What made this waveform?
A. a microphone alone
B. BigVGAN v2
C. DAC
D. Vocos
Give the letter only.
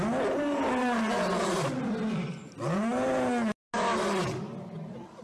A